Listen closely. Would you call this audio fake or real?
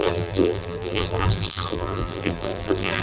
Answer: fake